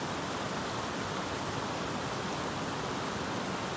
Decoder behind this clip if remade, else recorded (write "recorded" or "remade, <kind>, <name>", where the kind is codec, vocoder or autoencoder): recorded